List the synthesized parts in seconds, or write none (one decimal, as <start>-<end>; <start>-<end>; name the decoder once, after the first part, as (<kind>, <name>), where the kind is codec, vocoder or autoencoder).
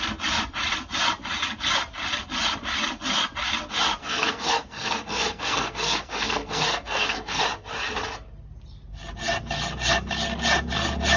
4.0-7.4 (codec, SNAC)